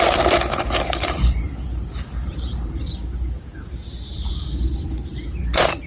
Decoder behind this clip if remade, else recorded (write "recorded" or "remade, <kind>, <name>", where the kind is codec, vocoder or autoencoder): remade, vocoder, BigVGAN v2